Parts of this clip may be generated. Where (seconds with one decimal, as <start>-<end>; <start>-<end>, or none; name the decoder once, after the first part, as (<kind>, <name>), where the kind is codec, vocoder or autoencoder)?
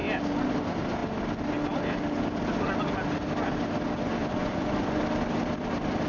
4.2-5.0 (vocoder, Vocos)